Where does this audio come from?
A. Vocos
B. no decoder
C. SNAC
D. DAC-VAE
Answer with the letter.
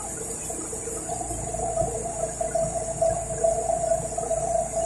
B